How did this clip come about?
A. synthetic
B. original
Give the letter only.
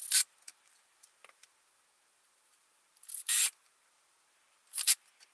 A